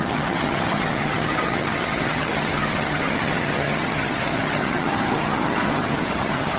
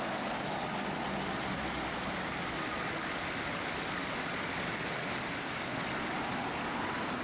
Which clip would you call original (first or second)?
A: second